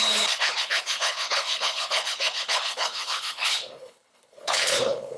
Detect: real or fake fake